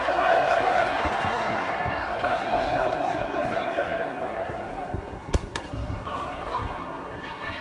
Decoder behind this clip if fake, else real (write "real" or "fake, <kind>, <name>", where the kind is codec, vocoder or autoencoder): fake, codec, SNAC